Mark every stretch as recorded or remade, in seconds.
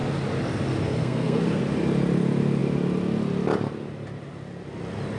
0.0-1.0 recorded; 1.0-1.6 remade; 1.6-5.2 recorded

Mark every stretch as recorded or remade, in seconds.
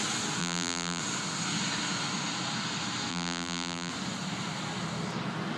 0.0-0.4 recorded; 0.4-1.0 remade; 1.0-3.1 recorded; 3.1-3.9 remade; 3.9-5.6 recorded